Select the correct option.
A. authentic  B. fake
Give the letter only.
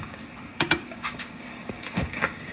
B